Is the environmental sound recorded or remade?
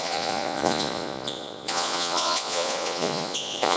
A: remade